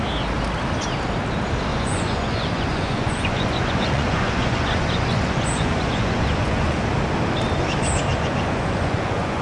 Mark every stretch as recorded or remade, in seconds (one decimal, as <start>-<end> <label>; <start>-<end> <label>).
0.0-1.7 recorded; 1.7-6.8 remade; 6.8-8.1 recorded; 8.1-9.4 remade